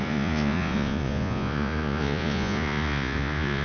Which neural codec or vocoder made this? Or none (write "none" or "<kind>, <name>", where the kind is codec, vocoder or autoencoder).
vocoder, Vocos